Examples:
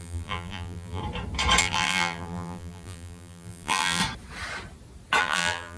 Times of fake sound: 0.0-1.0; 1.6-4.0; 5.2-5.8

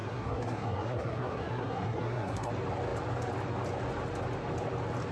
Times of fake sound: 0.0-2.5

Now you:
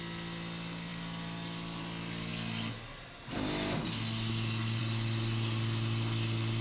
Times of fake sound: none

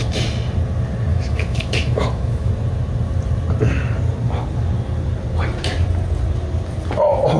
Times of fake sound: 1.1-2.5